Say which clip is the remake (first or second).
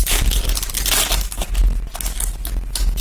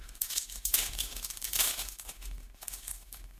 second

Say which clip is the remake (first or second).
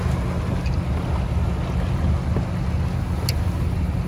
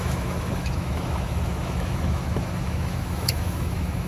second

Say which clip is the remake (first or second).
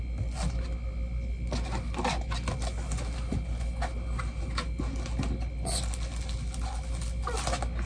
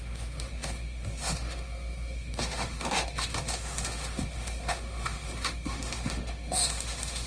second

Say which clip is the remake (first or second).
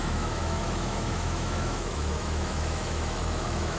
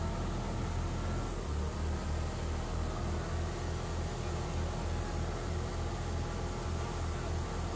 first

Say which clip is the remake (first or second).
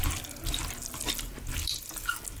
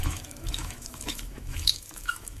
second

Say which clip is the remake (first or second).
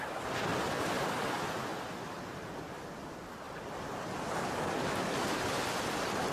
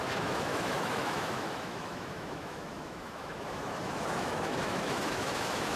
second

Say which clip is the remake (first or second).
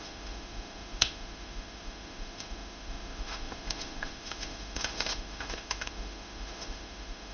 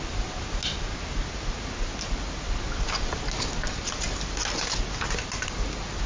first